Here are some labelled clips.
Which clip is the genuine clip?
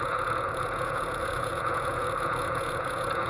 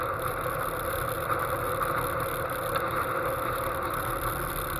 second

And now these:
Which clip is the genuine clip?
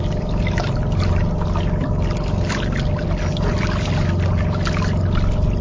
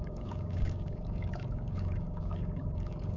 first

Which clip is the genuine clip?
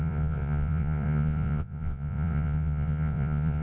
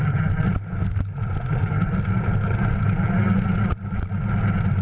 second